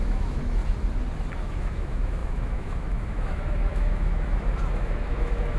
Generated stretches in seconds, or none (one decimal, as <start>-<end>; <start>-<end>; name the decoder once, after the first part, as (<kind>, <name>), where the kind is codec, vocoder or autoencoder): 0.0-0.6 (autoencoder, DAC-VAE); 1.4-5.6